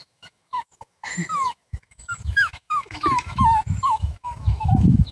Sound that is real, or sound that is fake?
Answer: fake